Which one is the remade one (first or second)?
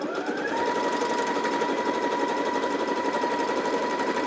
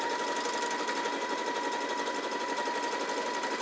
first